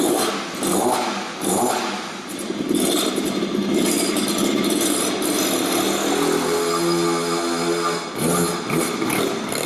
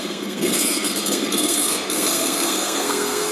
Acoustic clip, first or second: first